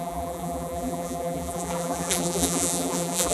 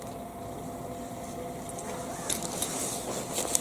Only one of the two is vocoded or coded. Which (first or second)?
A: first